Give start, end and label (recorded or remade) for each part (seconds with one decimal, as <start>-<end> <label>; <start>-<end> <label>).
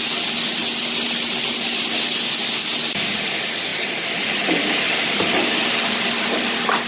0.0-3.7 recorded; 3.7-5.4 remade; 5.4-6.9 recorded